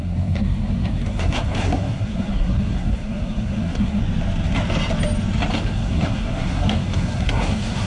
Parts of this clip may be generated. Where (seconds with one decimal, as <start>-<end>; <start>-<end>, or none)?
0.0-4.0; 5.6-7.9